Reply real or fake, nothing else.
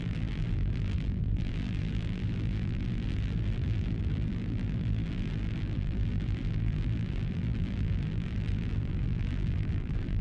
fake